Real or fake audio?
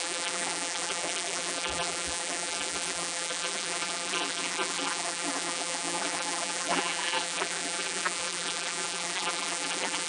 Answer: fake